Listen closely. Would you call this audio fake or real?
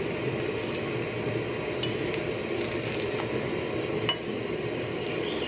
real